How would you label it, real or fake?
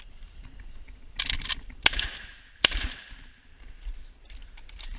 real